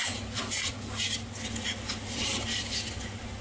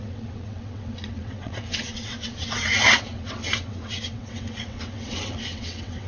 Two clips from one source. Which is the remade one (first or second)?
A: second